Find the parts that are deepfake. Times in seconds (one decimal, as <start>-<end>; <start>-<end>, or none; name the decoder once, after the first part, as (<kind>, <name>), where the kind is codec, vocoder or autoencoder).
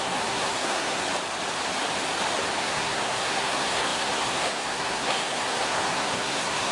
0.0-1.0 (codec, SNAC); 2.6-6.7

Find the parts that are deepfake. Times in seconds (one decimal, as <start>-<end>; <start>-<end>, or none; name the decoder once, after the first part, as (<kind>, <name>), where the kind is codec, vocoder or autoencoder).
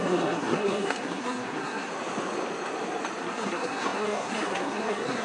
0.0-1.9 (codec, SNAC); 3.2-5.2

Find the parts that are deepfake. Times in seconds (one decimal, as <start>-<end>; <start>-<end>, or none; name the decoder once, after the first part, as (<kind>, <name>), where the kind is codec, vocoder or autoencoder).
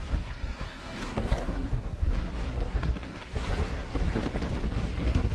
0.0-4.2 (codec, SNAC); 4.7-5.3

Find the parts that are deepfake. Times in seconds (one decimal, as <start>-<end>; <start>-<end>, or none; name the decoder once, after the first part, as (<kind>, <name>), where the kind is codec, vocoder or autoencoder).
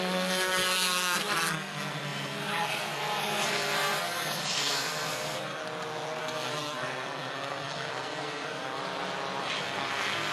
0.0-5.6 (codec, SNAC); 6.2-8.8; 9.4-10.3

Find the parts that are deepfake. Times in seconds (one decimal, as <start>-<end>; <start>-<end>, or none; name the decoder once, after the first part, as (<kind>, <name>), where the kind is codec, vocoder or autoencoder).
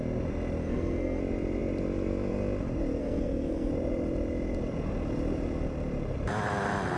0.6-1.2 (codec, SNAC); 3.0-3.7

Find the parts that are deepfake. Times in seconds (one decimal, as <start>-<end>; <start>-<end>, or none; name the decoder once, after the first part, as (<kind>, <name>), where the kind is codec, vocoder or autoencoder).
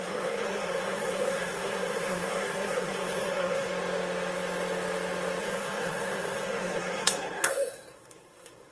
0.0-3.7 (codec, SNAC); 5.4-8.7